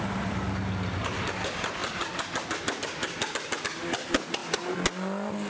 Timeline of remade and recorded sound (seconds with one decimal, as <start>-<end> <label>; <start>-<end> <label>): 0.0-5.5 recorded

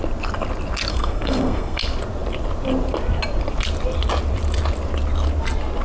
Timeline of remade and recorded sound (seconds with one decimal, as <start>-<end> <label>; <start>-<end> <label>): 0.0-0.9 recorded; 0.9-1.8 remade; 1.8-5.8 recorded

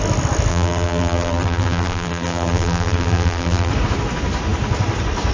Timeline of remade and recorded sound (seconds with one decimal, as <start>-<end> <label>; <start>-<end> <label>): 0.0-0.5 recorded; 0.5-3.7 remade; 3.7-5.3 recorded